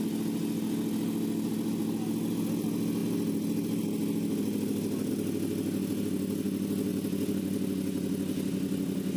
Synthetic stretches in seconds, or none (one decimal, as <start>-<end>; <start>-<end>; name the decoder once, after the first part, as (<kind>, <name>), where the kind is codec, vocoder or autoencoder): none